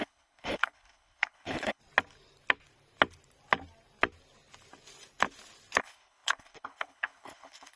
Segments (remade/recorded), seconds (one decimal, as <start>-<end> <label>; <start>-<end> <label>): 0.0-1.8 remade; 1.8-5.8 recorded; 5.8-7.8 remade